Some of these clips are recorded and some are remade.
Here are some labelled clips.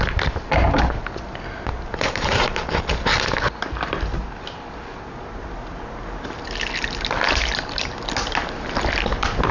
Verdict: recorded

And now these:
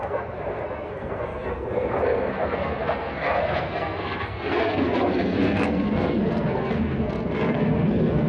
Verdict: remade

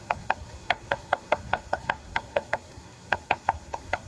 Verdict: remade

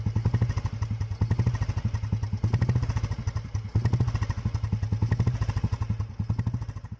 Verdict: recorded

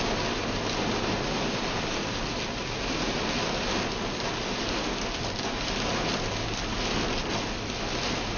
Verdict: recorded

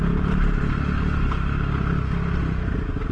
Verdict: recorded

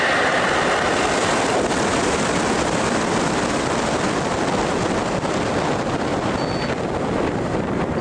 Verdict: recorded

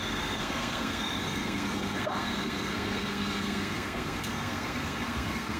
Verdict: remade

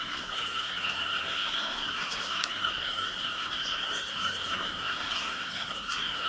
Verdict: remade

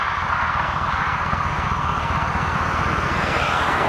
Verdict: remade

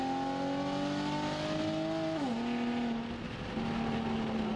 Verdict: recorded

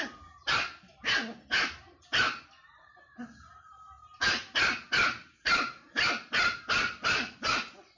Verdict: recorded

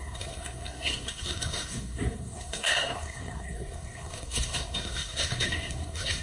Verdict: remade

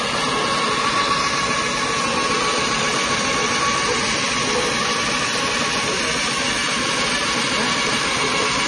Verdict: recorded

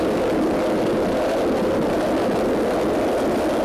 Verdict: recorded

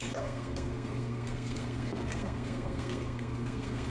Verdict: remade